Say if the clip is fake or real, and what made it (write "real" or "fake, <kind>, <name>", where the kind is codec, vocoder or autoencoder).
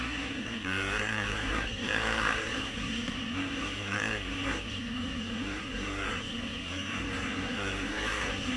fake, codec, SNAC